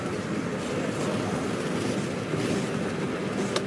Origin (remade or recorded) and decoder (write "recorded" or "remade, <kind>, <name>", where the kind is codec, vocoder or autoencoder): recorded